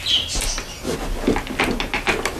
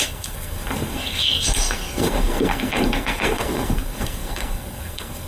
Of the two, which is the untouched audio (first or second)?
first